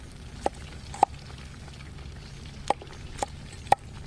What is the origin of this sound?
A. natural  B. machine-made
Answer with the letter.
A